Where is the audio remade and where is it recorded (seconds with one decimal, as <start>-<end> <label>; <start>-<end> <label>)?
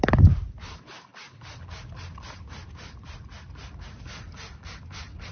0.0-5.3 recorded